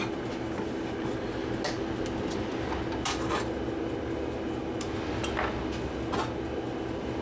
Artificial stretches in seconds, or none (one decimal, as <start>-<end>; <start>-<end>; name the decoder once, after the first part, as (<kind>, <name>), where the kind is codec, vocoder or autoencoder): none